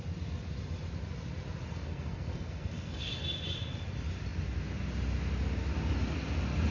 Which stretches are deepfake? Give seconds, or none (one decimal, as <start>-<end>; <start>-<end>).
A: 1.7-3.2